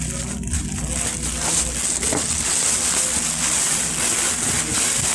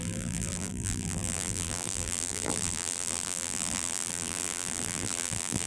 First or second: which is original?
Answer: first